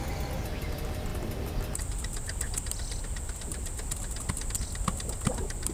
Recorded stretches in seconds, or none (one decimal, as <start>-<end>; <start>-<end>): 0.0-5.7